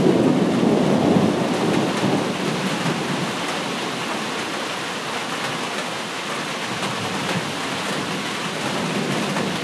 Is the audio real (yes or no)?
yes